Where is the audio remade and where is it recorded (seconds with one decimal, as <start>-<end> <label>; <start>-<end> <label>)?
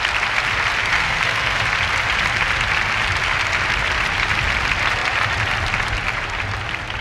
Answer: 0.0-0.8 recorded; 0.8-1.6 remade; 1.6-7.0 recorded